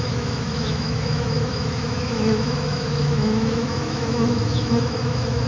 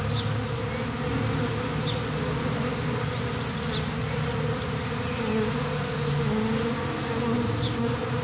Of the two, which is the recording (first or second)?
second